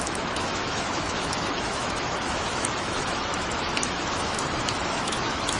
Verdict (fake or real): fake